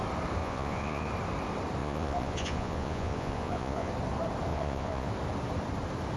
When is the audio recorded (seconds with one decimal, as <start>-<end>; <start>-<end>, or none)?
0.0-0.4; 1.1-1.8; 3.9-4.5; 5.1-6.2